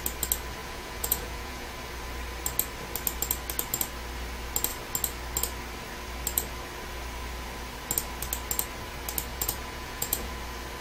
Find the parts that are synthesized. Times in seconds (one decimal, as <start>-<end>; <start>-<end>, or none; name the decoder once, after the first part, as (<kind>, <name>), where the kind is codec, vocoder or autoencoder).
0.6-1.7 (vocoder, Vocos); 9.3-10.3